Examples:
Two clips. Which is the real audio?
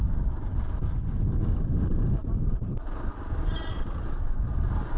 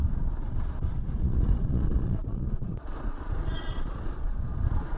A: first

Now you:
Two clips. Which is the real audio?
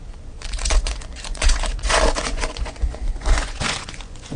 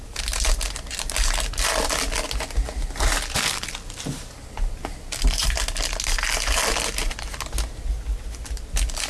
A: second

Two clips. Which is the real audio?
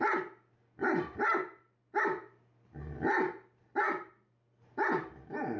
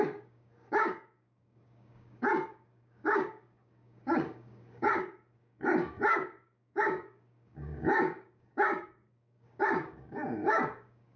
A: first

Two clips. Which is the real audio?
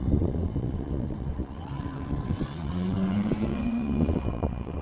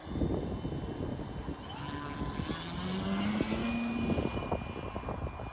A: second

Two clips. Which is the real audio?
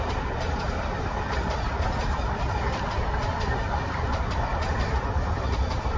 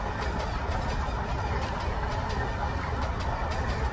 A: second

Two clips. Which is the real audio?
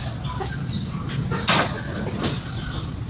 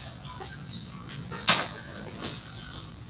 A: first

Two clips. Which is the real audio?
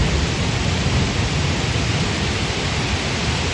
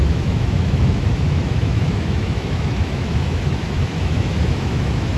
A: first